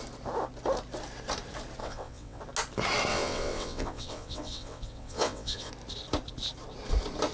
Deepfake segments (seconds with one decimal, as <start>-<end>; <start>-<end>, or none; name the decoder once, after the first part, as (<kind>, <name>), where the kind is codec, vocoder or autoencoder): 1.8-2.4 (vocoder, WaveNeXt); 3.1-5.7